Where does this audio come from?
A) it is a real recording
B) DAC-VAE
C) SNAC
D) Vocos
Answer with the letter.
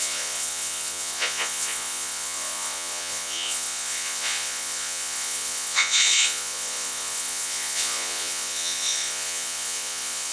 D